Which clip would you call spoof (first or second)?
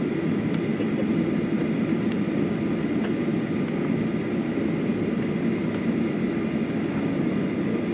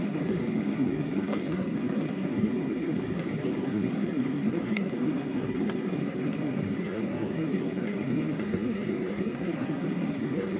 second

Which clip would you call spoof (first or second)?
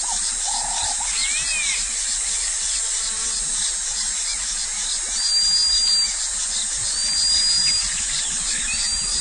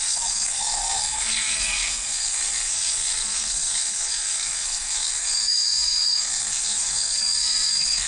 second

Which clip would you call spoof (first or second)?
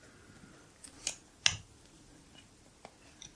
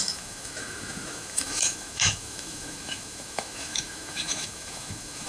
second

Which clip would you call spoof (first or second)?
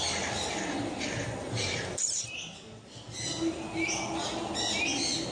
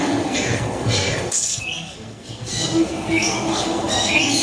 second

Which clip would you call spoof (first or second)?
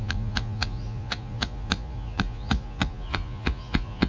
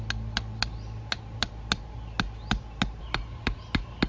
first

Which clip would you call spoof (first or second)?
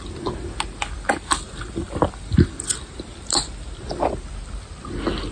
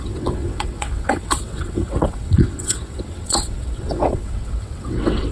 second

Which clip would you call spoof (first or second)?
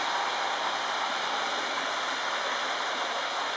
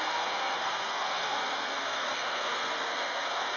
second